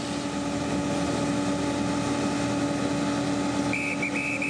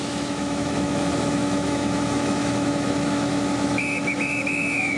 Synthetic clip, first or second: second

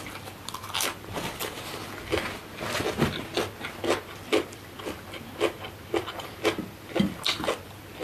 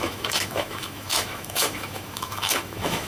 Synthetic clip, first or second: second